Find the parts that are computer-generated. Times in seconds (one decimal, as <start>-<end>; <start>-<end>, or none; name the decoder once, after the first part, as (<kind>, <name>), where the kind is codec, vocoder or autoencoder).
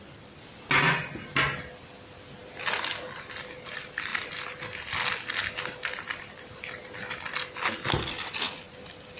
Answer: none